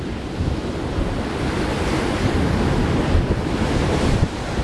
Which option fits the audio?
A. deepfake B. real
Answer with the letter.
B